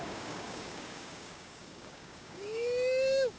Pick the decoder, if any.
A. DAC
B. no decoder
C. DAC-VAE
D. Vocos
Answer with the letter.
A